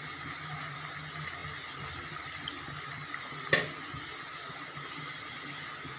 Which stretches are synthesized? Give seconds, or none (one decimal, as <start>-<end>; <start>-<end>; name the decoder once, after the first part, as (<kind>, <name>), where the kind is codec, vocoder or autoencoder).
none